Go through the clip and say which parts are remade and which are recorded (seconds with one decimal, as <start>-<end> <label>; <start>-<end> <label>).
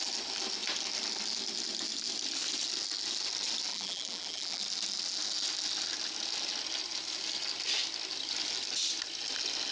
0.0-3.7 recorded; 3.7-4.6 remade; 4.6-9.7 recorded